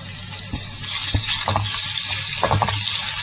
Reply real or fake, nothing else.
real